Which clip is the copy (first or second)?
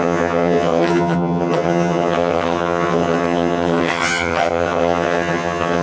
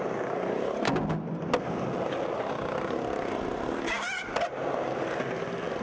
first